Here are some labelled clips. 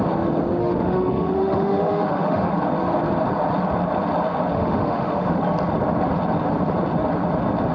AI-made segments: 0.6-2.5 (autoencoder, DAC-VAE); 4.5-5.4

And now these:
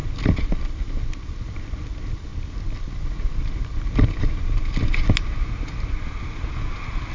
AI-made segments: none

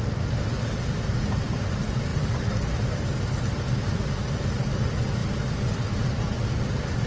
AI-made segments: none